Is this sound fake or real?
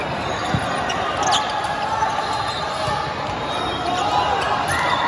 real